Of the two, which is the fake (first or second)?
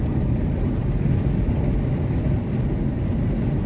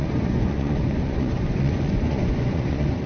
second